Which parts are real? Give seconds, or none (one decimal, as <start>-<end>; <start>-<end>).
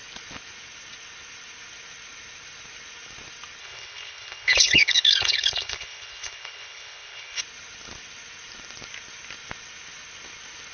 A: 0.0-3.6; 7.4-10.7